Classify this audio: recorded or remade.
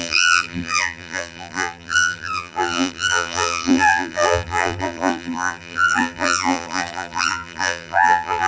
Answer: remade